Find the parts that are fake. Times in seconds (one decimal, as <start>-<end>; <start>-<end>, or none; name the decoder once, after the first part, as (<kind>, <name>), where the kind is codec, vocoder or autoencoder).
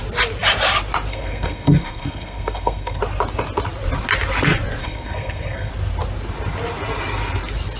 1.1-3.0 (codec, SNAC); 4.8-5.7